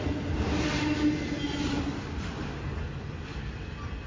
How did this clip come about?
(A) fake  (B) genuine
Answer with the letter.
B